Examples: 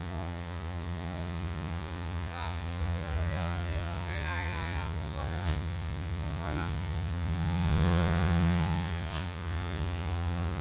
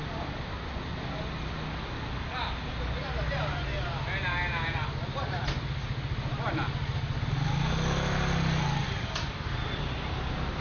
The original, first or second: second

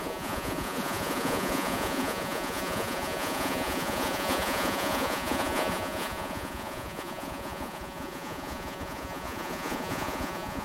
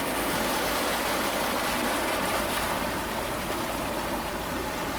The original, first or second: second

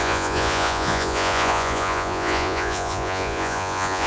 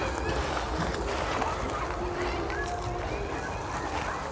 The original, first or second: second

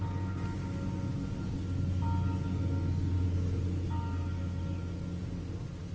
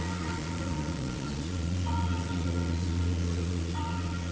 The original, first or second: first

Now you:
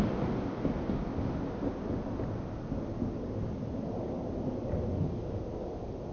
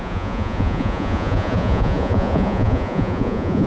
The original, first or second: first